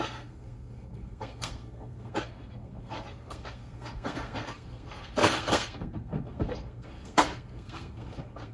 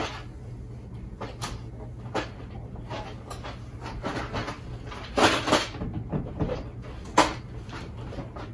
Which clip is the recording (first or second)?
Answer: second